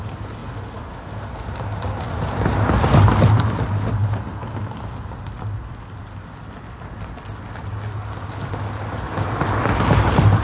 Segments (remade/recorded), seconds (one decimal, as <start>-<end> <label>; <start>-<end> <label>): 0.0-10.4 recorded